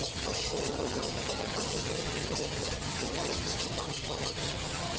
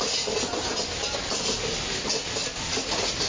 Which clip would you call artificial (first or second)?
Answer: first